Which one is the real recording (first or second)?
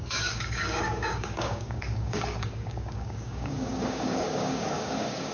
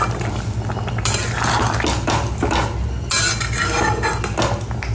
second